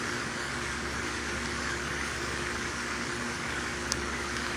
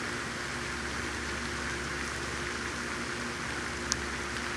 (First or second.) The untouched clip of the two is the second